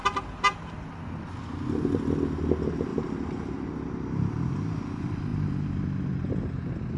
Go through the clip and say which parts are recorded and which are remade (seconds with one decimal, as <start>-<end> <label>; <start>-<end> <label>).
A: 0.0-2.9 recorded; 2.9-3.7 remade; 3.7-7.0 recorded